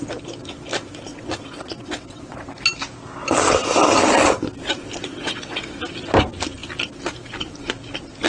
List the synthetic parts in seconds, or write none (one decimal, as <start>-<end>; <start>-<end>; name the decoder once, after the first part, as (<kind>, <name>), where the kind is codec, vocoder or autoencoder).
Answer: 1.1-2.5 (vocoder, WaveNeXt); 5.0-5.6

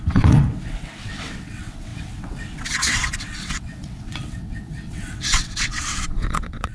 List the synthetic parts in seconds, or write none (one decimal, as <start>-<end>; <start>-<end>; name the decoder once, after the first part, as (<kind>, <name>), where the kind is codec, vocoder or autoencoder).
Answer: 0.0-6.7 (vocoder, WaveNeXt)

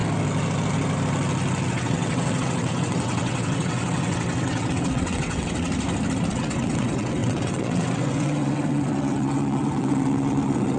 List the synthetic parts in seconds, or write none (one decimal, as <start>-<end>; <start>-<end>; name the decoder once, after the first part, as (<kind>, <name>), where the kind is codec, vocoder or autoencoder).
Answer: 1.7-5.7 (vocoder, WaveNeXt); 6.3-10.8

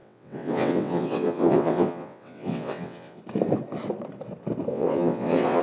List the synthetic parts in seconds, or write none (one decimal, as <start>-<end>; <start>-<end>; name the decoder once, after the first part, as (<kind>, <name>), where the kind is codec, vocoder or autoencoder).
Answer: 0.0-3.2 (vocoder, WaveNeXt); 4.7-5.6

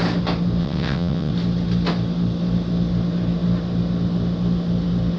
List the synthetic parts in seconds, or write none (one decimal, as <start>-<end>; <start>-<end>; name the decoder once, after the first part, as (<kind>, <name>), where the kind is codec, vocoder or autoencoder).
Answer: 0.6-1.3 (vocoder, WaveNeXt)